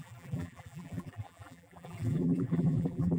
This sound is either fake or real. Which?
fake